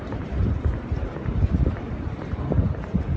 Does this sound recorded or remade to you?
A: remade